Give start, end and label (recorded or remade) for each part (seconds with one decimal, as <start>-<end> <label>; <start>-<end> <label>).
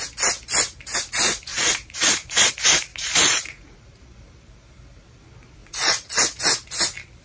0.0-1.5 recorded; 1.5-2.5 remade; 2.5-2.9 recorded; 2.9-3.8 remade; 3.8-5.6 recorded; 5.6-6.4 remade; 6.4-7.2 recorded